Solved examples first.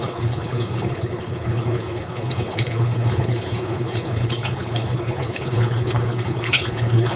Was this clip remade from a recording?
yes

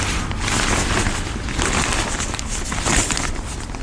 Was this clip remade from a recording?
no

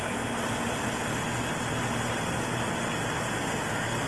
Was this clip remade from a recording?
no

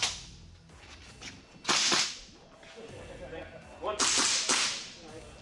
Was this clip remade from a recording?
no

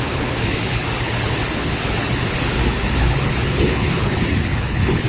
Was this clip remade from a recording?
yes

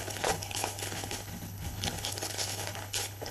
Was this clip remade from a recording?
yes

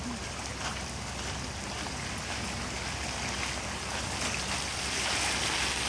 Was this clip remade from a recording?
no